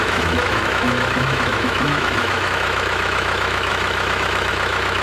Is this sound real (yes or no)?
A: no